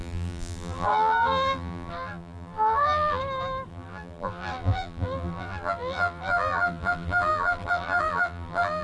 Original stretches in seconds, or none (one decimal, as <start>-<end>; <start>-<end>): 3.2-3.7

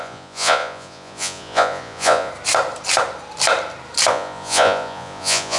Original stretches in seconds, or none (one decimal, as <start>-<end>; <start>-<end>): 2.3-4.1